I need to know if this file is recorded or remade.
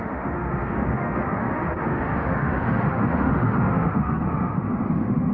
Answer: remade